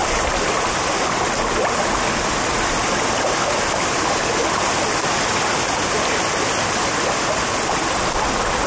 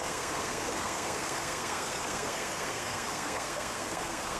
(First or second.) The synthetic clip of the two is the second